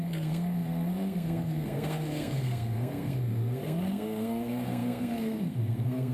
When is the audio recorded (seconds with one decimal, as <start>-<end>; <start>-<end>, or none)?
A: none